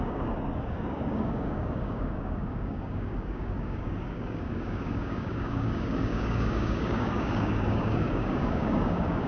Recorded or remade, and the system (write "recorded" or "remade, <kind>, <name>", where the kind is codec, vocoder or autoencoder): remade, codec, DAC